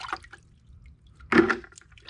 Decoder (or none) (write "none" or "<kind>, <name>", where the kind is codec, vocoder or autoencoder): none